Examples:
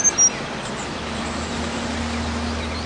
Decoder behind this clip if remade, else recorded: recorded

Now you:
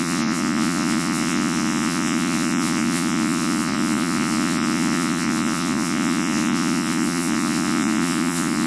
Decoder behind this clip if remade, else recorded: remade, vocoder, Vocos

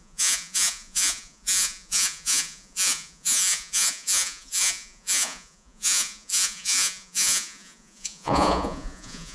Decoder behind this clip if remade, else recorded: remade, vocoder, Vocos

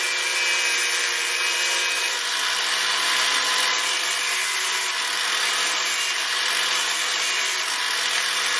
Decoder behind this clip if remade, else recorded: recorded